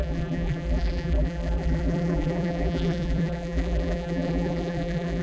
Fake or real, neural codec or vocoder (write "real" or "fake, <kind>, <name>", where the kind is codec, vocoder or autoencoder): fake, vocoder, BigVGAN v2